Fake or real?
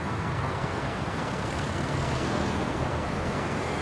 fake